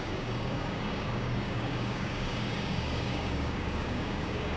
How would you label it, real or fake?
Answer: fake